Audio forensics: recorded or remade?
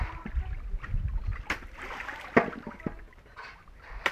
recorded